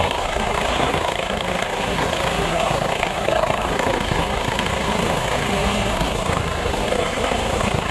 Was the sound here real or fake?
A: fake